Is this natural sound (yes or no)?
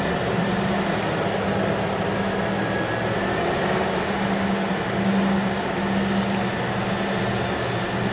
yes